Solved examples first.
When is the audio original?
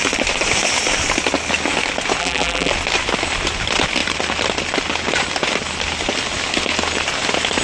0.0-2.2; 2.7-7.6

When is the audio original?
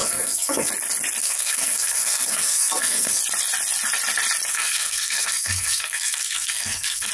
0.7-1.2; 3.2-4.5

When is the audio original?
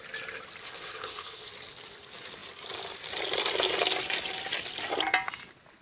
0.0-0.6; 1.5-5.8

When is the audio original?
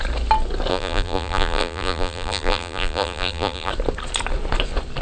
0.0-0.7; 3.7-5.0